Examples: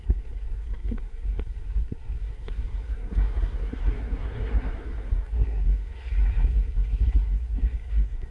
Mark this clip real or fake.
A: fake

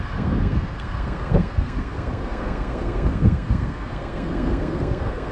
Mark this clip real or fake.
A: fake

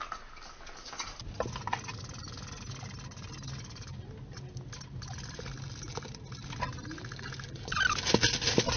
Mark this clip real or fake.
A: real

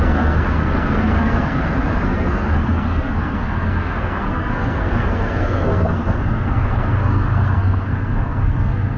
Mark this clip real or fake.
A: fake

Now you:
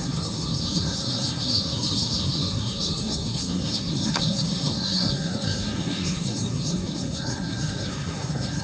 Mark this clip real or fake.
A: fake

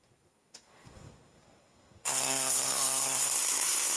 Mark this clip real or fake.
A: fake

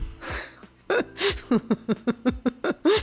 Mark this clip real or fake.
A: real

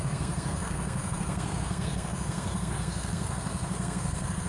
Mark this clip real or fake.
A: fake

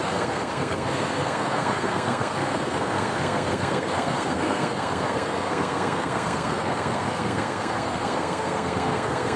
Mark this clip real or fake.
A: fake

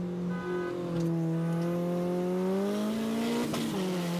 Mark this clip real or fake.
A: real